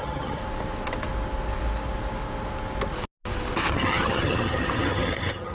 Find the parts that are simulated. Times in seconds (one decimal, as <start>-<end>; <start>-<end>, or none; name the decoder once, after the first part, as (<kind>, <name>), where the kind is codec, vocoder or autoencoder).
0.0-0.4 (vocoder, HiFi-GAN); 3.7-5.5